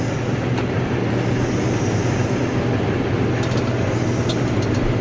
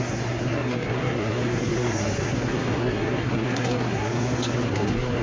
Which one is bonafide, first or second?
first